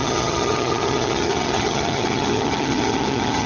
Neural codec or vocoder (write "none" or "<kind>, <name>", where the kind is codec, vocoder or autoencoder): vocoder, HiFi-GAN